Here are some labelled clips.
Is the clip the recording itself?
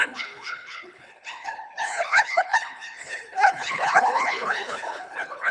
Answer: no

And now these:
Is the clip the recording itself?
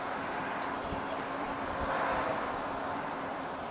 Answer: no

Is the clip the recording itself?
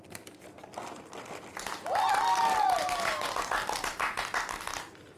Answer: yes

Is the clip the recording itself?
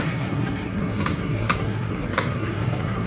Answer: no